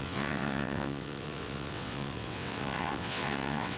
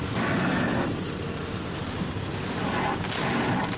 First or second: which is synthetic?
first